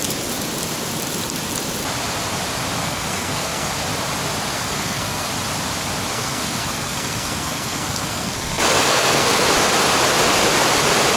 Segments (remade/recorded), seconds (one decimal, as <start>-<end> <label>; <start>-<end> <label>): 0.0-2.8 recorded; 2.8-3.7 remade; 3.7-4.5 recorded; 4.5-5.3 remade; 5.3-6.1 recorded; 6.1-9.5 remade; 9.5-11.2 recorded